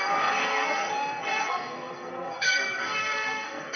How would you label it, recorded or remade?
remade